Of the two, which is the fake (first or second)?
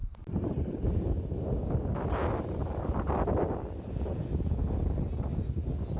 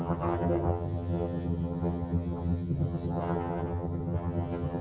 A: second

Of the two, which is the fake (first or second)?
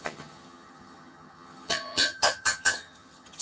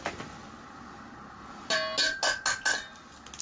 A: first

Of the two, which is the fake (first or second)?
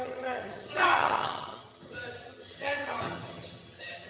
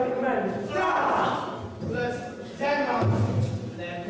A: first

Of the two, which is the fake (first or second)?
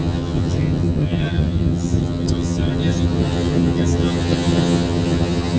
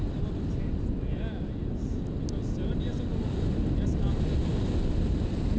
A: first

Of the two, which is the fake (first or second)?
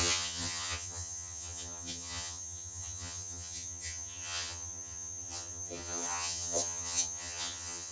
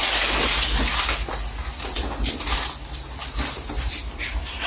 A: first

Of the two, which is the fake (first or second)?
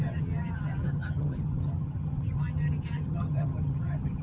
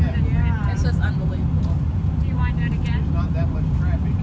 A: first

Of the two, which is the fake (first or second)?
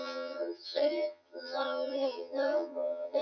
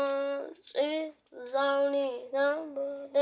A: first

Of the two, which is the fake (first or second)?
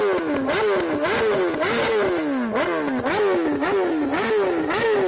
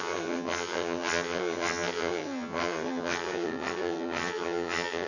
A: second